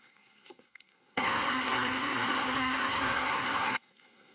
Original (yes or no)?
no